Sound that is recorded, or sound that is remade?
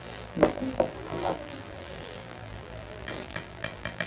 remade